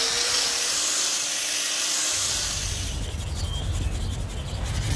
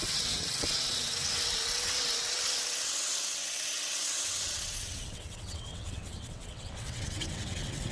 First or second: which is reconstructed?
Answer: second